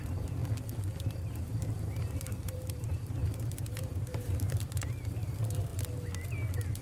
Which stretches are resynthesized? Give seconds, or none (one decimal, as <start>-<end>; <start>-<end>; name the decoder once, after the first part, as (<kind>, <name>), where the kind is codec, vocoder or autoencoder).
0.0-0.4 (vocoder, BigVGAN v2); 1.0-5.7